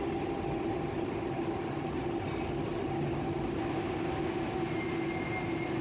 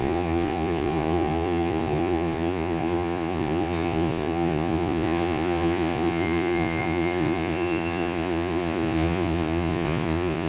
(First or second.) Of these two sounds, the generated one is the second